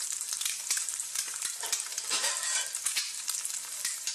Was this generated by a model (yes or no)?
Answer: yes